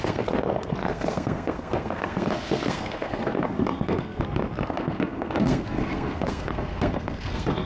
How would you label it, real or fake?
fake